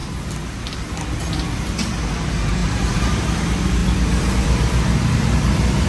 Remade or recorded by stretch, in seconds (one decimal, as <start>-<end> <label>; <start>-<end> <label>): 0.0-2.6 recorded; 2.6-3.2 remade; 3.2-5.9 recorded